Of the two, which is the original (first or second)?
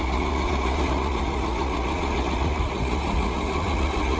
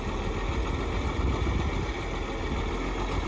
second